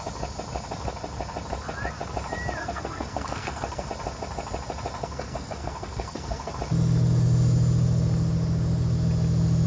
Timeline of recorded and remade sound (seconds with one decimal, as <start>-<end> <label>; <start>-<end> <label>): 0.0-2.6 recorded; 2.6-3.9 remade; 3.9-5.0 recorded; 5.0-6.5 remade; 6.5-9.7 recorded